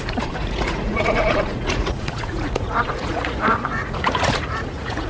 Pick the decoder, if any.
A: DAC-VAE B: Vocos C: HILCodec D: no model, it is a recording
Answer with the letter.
B